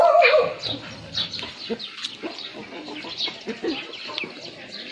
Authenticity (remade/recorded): recorded